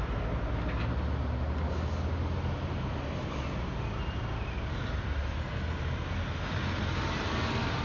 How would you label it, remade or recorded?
recorded